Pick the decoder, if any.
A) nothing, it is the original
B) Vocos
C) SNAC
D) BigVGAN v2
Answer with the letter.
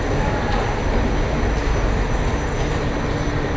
A